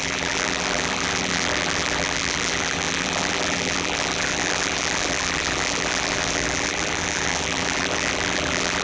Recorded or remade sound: remade